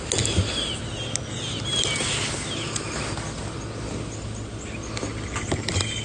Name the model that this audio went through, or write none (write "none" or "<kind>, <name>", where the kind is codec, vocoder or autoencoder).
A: none